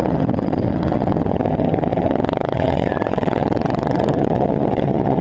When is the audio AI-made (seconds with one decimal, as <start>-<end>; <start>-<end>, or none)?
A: 0.0-5.2